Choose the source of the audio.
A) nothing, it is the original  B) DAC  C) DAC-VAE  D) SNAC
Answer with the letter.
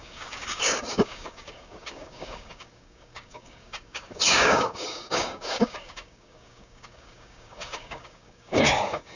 B